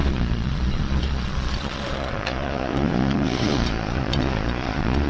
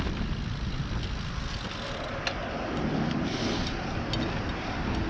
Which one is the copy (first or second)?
first